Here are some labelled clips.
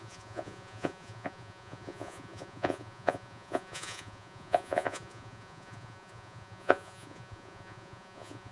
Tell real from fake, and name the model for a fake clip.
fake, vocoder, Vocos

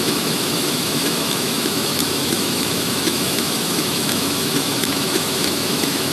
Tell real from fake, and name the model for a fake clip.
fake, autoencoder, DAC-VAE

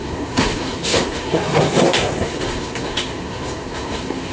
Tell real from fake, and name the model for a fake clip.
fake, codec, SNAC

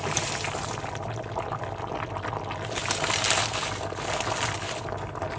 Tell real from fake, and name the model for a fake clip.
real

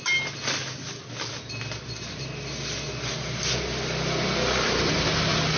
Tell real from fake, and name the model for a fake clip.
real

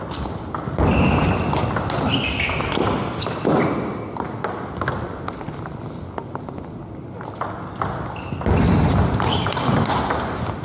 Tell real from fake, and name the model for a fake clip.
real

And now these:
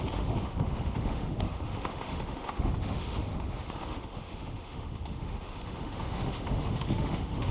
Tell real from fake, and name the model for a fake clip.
fake, autoencoder, DAC-VAE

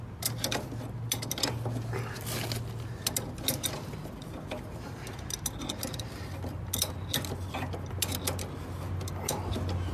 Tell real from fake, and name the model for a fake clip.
real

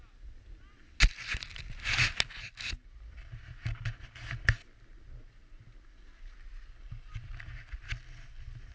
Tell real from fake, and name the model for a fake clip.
real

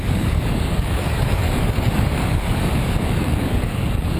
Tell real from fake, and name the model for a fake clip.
fake, codec, DAC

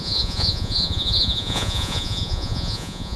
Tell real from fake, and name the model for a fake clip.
fake, vocoder, Vocos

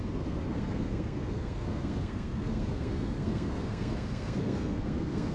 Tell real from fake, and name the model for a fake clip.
fake, codec, SNAC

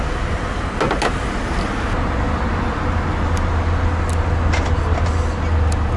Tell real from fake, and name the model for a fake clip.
real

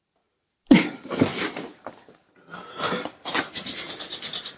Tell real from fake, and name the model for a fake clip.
real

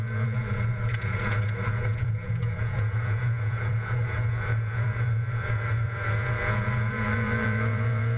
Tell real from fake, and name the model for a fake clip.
fake, vocoder, Vocos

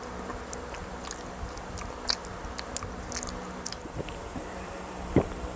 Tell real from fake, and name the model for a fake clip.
real